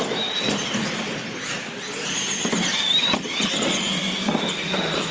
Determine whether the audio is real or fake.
real